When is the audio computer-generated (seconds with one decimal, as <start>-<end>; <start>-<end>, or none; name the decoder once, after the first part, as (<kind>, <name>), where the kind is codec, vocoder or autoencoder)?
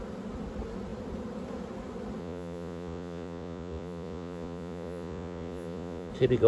2.2-6.1 (vocoder, Vocos)